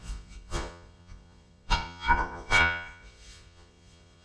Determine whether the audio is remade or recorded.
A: remade